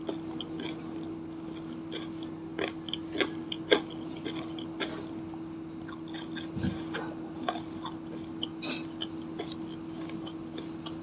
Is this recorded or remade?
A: recorded